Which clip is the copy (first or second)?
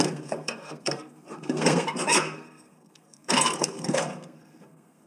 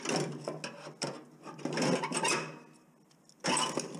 first